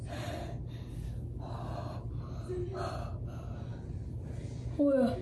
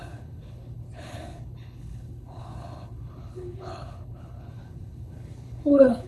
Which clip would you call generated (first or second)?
second